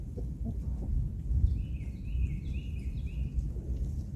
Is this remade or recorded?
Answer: recorded